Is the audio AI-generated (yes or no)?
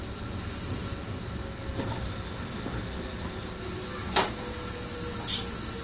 no